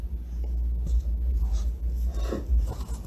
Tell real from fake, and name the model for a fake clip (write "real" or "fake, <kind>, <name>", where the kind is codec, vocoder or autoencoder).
real